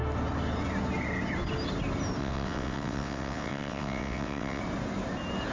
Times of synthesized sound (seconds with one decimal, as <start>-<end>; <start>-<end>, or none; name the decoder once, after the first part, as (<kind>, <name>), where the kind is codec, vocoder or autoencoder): 2.2-4.6 (vocoder, WaveNeXt)